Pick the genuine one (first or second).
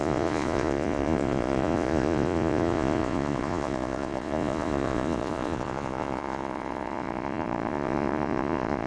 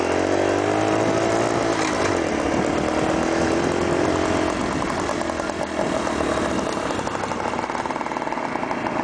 second